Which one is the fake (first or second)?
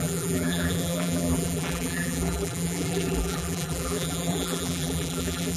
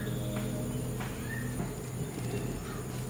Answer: first